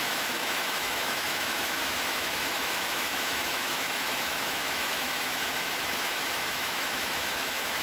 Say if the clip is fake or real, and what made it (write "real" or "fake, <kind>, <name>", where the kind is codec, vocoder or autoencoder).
fake, autoencoder, DAC-VAE